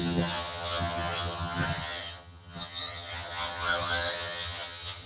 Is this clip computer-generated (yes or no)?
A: yes